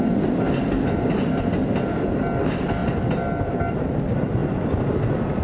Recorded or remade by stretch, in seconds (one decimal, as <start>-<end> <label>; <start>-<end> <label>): 0.0-5.4 recorded